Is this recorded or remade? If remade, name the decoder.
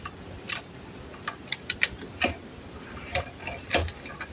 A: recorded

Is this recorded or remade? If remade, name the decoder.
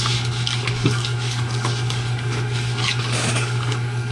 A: remade, codec, DAC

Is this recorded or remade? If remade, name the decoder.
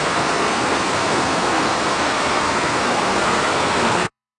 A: remade, codec, SNAC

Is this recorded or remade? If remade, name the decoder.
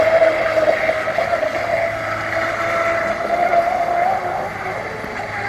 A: recorded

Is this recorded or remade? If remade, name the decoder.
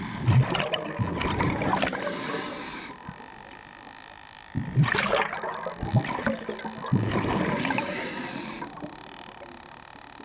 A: recorded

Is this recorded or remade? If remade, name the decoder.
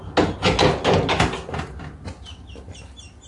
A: recorded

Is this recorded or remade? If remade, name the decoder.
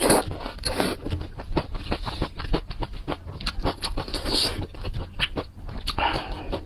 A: recorded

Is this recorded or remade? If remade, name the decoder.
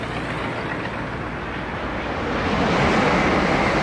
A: recorded